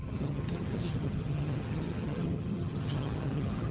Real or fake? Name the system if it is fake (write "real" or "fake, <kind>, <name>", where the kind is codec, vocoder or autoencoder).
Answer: fake, vocoder, HiFi-GAN